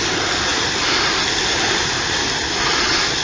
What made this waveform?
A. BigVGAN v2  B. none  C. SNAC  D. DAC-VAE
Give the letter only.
B